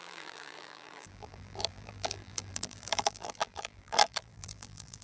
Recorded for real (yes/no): no